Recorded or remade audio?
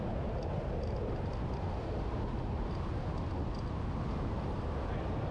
recorded